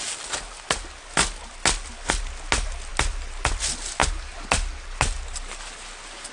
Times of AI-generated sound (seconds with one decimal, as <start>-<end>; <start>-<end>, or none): none

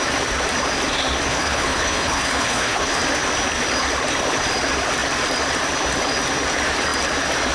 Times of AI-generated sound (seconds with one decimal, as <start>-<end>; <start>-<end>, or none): 1.3-3.0

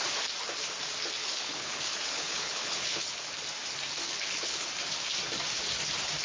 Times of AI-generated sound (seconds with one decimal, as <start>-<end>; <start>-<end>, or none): 1.2-3.3; 4.0-4.7

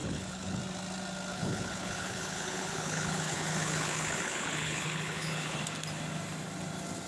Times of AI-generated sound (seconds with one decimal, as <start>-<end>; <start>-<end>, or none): 0.0-0.6; 1.3-5.6

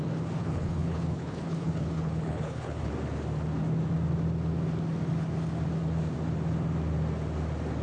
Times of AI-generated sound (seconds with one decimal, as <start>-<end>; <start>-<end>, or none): 0.4-2.9

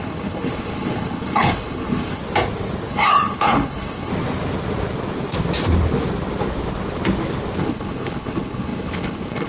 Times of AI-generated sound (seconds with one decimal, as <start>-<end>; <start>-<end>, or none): 0.0-2.2; 2.9-4.1; 7.6-9.5